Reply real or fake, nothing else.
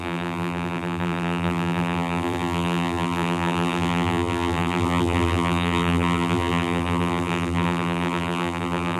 fake